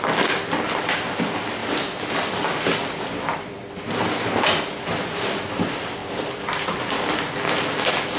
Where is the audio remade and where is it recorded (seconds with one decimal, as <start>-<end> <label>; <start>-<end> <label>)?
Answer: 0.0-1.6 recorded; 1.6-5.6 remade; 5.6-6.0 recorded; 6.0-6.8 remade; 6.8-8.2 recorded